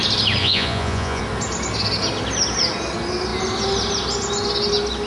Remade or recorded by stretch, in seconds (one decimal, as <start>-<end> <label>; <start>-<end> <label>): 0.0-0.4 recorded; 0.4-1.2 remade; 1.2-5.1 recorded